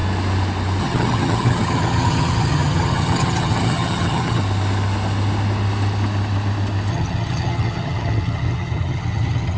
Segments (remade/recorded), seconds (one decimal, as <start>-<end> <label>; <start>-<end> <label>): 0.0-0.8 recorded; 0.8-4.4 remade; 4.4-6.9 recorded; 6.9-9.6 remade